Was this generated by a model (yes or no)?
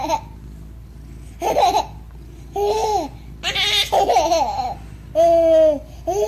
no